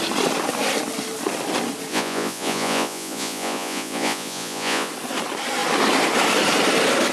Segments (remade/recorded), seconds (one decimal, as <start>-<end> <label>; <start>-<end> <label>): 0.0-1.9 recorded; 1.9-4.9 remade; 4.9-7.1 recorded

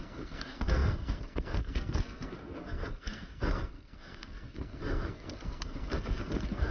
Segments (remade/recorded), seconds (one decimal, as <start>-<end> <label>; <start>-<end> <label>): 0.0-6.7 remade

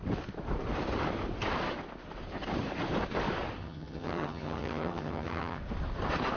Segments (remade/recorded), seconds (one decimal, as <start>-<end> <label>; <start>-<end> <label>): 0.0-3.6 recorded; 3.6-5.6 remade; 5.6-6.4 recorded

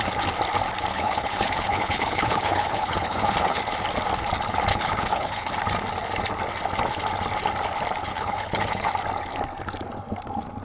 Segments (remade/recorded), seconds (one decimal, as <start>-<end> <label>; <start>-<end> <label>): 0.0-0.9 recorded; 0.9-3.6 remade; 3.6-4.7 recorded; 4.7-5.5 remade; 5.5-8.1 recorded; 8.1-8.9 remade; 8.9-10.6 recorded